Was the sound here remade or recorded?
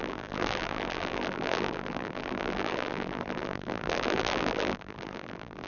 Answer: remade